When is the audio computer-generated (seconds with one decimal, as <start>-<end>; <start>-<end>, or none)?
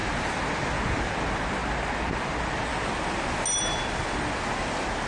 none